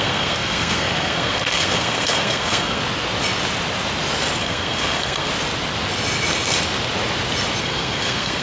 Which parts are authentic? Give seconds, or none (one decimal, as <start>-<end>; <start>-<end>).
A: 2.8-4.4; 5.3-7.6